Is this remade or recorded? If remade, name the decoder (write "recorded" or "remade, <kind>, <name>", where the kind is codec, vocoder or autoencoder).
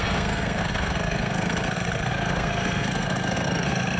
remade, codec, SNAC